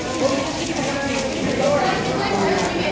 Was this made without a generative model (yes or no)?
yes